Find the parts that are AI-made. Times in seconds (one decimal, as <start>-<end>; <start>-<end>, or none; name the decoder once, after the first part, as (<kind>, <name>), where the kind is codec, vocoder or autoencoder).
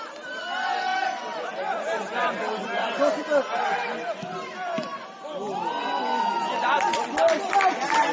none